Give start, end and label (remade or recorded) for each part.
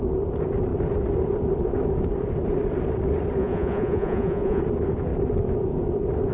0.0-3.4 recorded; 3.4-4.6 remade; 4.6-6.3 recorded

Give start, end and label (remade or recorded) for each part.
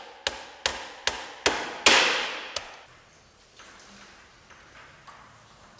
0.0-5.8 recorded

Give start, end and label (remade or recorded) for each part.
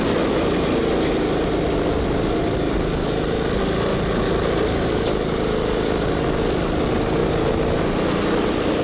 0.0-8.8 recorded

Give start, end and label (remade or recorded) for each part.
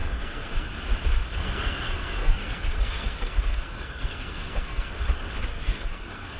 0.0-0.7 remade; 0.7-1.4 recorded; 1.4-4.9 remade; 4.9-5.5 recorded; 5.5-6.4 remade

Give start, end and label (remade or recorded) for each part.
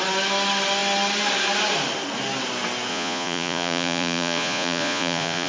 0.0-2.9 recorded; 2.9-5.5 remade